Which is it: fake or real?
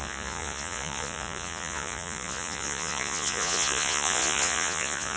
fake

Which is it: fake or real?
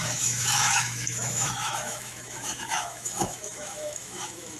fake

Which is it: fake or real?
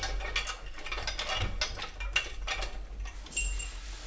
real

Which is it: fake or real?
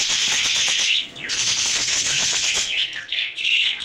fake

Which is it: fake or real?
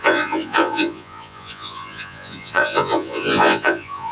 fake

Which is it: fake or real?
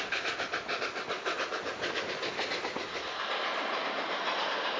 real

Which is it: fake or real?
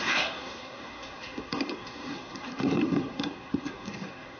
fake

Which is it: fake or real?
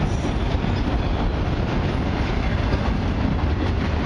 real